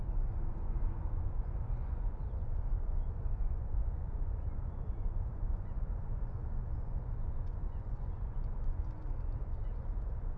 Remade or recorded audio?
remade